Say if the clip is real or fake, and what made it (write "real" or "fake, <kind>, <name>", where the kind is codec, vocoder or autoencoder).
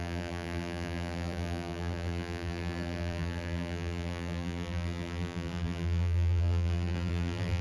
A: fake, vocoder, BigVGAN v2